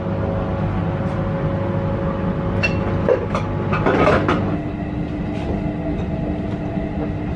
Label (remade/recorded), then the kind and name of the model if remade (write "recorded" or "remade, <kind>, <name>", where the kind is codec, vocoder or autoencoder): recorded